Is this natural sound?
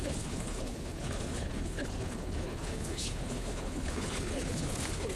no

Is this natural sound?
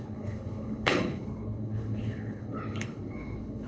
no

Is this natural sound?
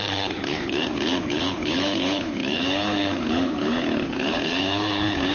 no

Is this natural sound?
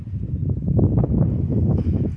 yes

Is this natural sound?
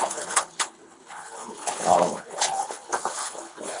no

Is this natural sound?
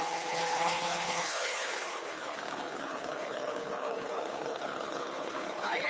no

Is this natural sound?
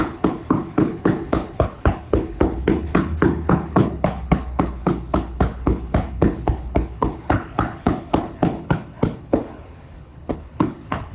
no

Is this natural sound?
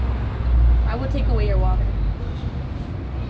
yes